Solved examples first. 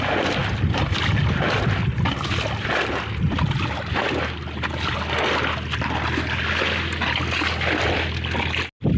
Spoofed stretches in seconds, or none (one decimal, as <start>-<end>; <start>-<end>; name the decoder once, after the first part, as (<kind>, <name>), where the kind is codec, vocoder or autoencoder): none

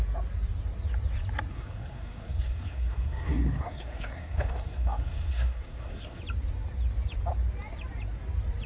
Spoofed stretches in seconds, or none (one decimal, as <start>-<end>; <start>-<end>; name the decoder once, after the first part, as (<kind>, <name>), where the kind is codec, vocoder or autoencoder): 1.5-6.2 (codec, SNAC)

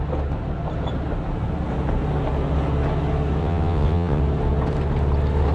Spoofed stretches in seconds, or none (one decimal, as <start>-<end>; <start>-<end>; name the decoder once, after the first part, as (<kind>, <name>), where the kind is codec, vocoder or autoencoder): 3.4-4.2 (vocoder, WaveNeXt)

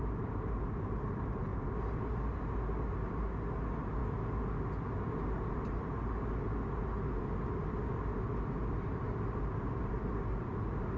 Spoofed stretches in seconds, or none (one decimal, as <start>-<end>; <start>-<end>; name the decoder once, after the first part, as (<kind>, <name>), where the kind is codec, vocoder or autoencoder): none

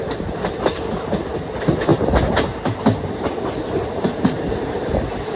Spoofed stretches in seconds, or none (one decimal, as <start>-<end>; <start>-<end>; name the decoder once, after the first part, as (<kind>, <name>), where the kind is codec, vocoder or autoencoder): none

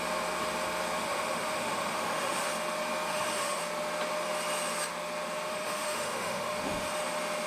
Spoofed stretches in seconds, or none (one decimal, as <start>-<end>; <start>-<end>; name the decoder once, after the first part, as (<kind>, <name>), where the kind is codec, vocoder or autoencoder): 1.0-2.5 (autoencoder, DAC-VAE); 3.1-3.6; 5.5-6.9

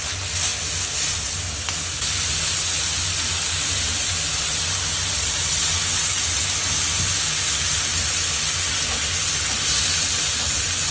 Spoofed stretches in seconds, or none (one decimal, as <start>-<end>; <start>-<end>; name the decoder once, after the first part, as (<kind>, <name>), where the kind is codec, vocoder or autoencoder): none